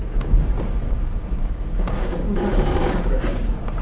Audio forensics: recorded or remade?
remade